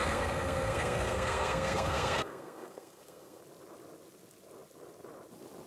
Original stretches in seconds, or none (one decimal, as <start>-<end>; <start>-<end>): 3.4-5.7